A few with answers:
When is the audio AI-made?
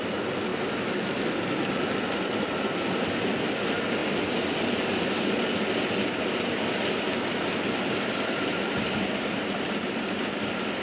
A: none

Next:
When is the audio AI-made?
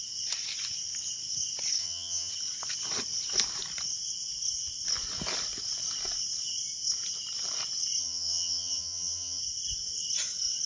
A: 1.8-2.3 (vocoder, HiFi-GAN); 8.0-9.4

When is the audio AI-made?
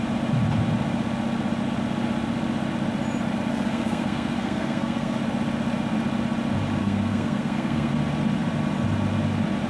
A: 3.5-5.2 (codec, SNAC); 6.8-7.9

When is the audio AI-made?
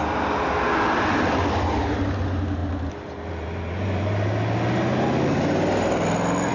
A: none